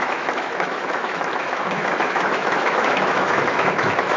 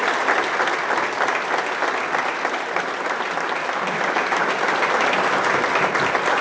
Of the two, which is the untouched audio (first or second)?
second